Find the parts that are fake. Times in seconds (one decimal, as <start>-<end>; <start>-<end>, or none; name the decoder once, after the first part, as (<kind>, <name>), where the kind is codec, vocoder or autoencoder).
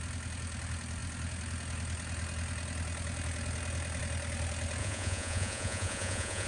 4.8-6.5 (vocoder, Vocos)